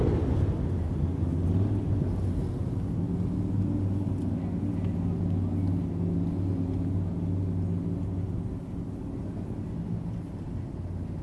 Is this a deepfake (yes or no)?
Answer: no